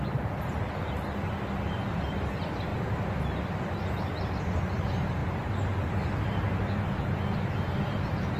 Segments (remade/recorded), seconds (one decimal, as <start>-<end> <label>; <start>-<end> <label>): 0.0-5.2 recorded; 5.2-7.6 remade; 7.6-8.4 recorded